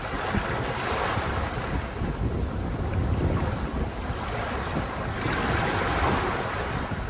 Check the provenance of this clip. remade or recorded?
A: recorded